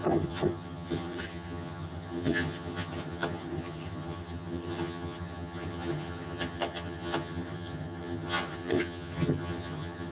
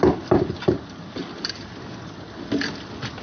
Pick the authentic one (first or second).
second